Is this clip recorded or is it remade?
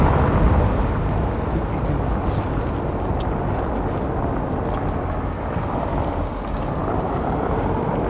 recorded